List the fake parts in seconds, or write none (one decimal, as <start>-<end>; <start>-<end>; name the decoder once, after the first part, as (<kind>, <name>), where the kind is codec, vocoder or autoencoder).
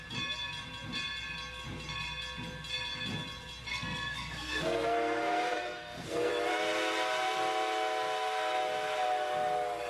3.7-6.3 (codec, SNAC)